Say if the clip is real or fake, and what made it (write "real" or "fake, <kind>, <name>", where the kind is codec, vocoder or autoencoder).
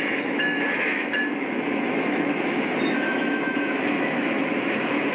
fake, autoencoder, DAC-VAE